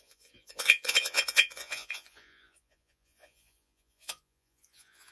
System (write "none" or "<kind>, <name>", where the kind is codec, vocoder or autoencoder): vocoder, Vocos